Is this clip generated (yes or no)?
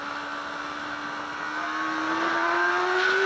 no